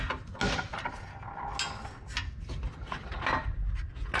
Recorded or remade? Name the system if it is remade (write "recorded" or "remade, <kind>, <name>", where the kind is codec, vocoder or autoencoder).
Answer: recorded